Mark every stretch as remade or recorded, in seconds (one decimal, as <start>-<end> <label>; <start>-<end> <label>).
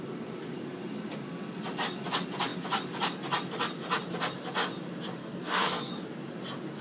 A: 0.0-5.2 recorded; 5.2-5.9 remade; 5.9-6.8 recorded